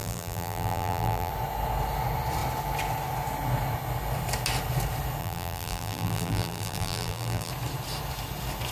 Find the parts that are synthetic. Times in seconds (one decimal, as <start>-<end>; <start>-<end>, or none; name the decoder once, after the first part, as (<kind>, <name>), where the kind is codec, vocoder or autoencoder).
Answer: 0.0-1.3 (vocoder, BigVGAN v2); 5.2-7.5

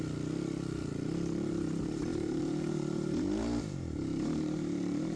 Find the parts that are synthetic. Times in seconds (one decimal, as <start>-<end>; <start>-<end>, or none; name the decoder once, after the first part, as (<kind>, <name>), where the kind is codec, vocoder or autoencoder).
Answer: 2.1-5.2 (vocoder, BigVGAN v2)

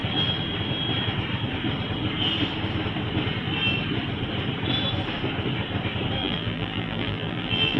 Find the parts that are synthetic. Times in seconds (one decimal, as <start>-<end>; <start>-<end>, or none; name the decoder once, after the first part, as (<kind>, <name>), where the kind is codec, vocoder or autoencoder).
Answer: 6.2-7.8 (vocoder, BigVGAN v2)

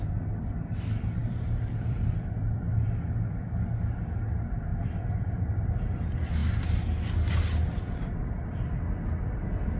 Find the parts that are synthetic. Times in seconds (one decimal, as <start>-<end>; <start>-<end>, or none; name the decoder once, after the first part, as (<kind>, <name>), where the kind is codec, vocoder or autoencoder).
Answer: 1.2-3.6 (vocoder, BigVGAN v2)

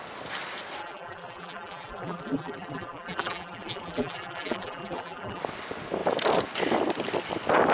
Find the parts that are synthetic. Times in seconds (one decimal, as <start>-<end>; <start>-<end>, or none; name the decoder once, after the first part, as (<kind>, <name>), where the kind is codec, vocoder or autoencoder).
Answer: 0.8-5.4 (vocoder, BigVGAN v2)